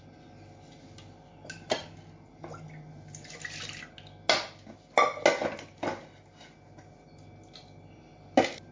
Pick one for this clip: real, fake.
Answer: real